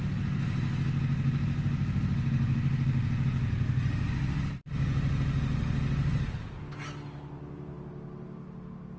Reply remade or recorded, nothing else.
recorded